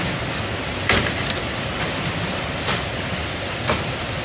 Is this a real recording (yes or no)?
yes